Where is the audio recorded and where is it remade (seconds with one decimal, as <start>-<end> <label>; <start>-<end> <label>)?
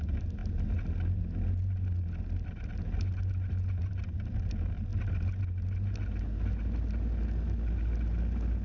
0.0-8.6 recorded